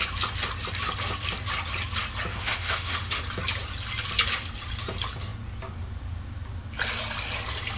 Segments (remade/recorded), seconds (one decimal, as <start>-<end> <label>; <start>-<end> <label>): 0.0-2.3 recorded; 2.3-3.2 remade; 3.2-7.8 recorded